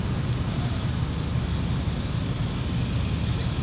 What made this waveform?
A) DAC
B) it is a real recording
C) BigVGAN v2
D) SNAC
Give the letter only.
B